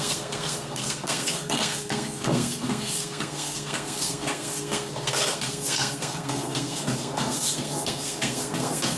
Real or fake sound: fake